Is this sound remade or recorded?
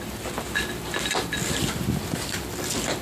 recorded